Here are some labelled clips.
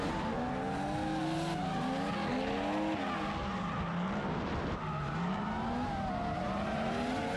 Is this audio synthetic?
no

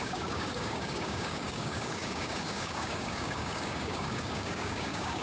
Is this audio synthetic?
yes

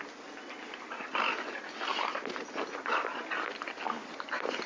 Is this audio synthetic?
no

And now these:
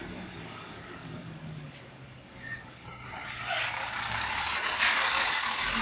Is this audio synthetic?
yes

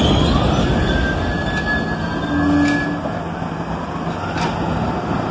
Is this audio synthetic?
no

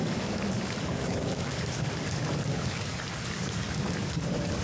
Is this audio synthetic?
yes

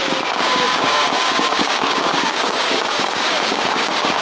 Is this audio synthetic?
yes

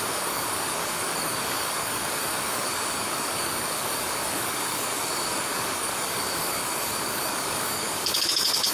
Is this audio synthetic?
yes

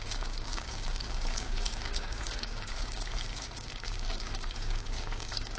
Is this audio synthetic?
yes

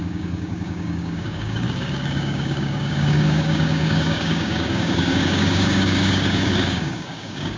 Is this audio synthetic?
yes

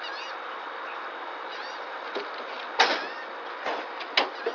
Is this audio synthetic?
no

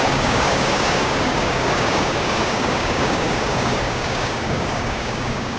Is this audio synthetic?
yes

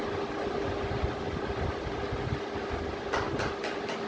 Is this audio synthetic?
no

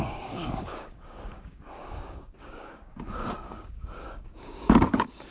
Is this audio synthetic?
yes